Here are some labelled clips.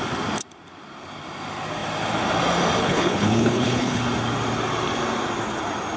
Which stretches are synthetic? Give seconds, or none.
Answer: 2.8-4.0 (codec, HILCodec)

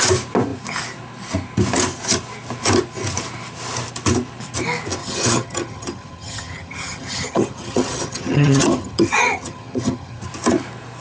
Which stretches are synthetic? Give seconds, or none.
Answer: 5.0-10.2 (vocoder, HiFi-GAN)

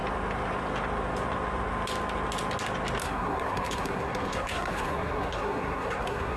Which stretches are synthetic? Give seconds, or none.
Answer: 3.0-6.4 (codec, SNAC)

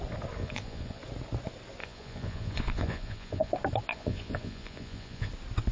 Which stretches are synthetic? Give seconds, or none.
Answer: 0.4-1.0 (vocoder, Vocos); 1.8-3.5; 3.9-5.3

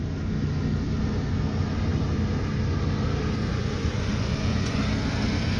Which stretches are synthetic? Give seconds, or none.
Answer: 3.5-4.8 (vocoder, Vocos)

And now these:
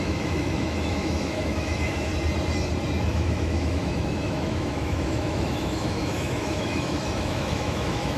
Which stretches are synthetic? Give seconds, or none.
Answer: 0.0-2.1 (autoencoder, DAC-VAE); 3.1-8.2

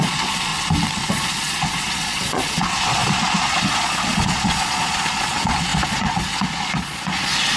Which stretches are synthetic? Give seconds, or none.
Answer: 0.0-0.5 (vocoder, Vocos); 1.1-7.6

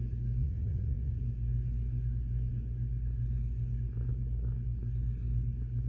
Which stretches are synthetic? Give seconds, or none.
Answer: 0.4-1.2 (vocoder, Vocos)